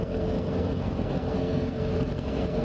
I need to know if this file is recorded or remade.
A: remade